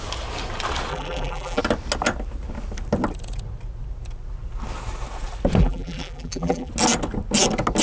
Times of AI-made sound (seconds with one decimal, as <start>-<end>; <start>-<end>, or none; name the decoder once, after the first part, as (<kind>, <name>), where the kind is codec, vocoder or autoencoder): 0.9-1.6 (vocoder, BigVGAN v2); 5.6-6.7